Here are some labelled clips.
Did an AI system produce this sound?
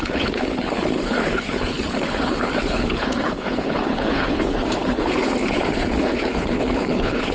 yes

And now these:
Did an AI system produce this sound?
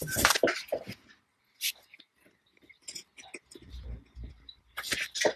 no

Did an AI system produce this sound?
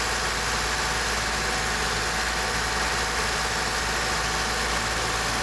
no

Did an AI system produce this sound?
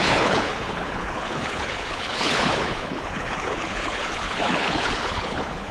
yes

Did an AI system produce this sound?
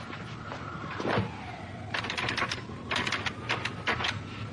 no